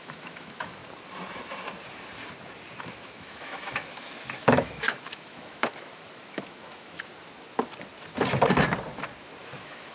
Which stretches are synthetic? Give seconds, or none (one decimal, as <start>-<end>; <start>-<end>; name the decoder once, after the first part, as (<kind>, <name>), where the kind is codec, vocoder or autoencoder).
0.0-0.8 (autoencoder, DAC-VAE); 2.8-7.1; 9.4-9.9